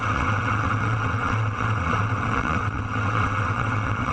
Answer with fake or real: fake